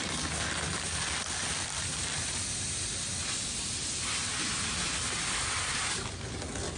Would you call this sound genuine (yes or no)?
yes